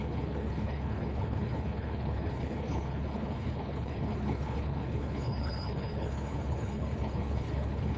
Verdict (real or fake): fake